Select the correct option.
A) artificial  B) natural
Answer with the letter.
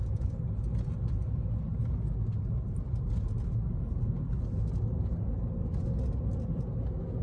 B